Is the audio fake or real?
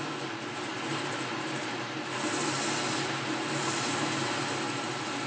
fake